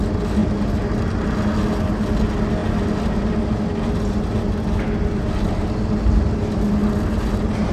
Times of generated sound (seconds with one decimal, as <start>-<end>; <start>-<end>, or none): none